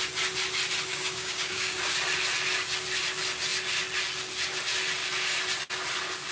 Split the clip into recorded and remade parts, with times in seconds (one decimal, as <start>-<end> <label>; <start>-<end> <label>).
0.0-0.9 recorded; 0.9-1.8 remade; 1.8-6.3 recorded